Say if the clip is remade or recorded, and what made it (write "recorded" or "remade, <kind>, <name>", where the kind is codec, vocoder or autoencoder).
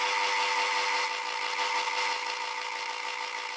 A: recorded